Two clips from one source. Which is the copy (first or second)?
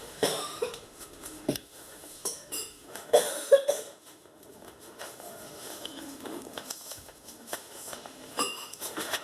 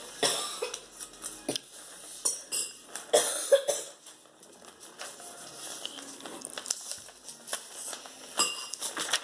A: first